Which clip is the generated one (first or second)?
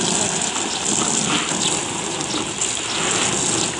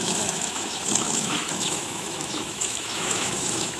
second